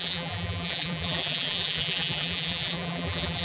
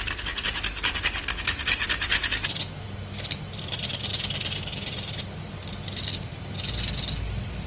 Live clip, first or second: second